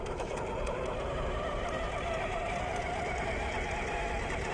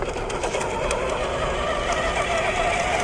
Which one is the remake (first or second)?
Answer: first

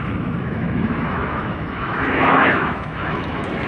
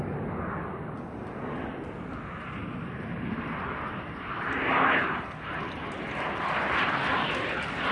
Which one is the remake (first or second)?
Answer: first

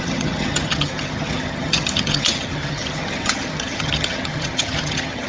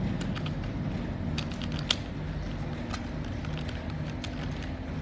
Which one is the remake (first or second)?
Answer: first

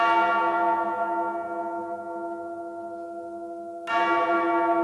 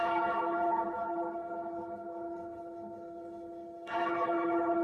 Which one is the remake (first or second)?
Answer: second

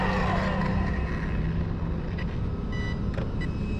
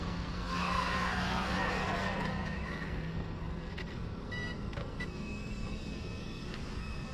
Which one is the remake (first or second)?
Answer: second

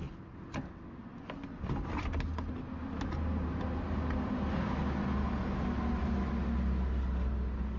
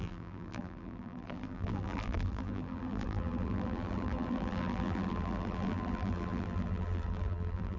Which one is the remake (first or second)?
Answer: second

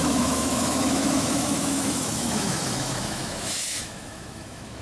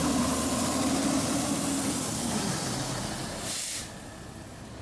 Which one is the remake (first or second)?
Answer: first